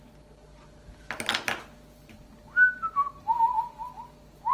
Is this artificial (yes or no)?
no